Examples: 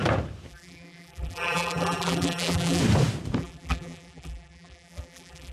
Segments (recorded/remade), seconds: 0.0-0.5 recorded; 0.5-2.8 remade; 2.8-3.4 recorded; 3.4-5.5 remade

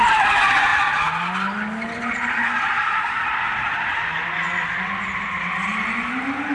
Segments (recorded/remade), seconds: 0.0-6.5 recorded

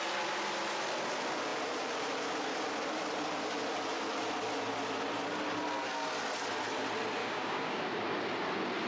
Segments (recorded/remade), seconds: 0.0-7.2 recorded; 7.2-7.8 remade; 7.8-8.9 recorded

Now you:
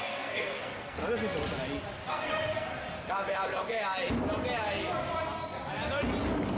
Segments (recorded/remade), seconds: 0.0-1.0 remade; 1.0-2.1 recorded; 2.1-2.7 remade; 2.7-6.6 recorded

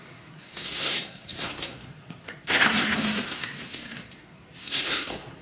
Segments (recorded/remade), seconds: 0.0-5.4 remade